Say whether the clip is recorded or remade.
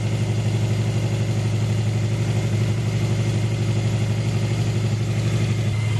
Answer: recorded